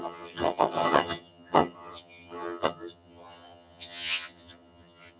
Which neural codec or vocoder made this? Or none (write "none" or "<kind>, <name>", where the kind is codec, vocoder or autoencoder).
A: vocoder, HiFi-GAN